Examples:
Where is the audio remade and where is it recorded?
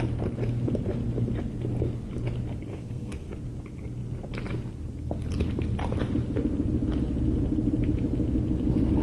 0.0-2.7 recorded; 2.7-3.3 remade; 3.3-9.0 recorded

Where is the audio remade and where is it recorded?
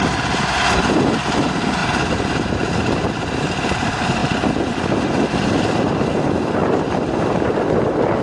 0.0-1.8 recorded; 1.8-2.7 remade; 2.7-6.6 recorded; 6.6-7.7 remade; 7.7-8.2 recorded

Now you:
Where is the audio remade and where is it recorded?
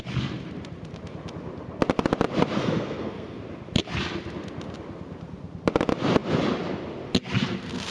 0.0-2.6 recorded; 2.6-3.4 remade; 3.4-7.9 recorded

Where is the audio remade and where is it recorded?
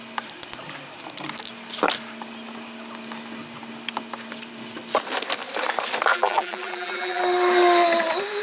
0.0-6.1 recorded; 6.1-7.2 remade; 7.2-8.4 recorded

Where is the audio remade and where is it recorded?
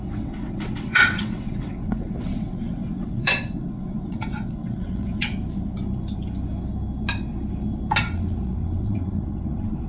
0.0-5.3 remade; 5.3-8.0 recorded; 8.0-9.9 remade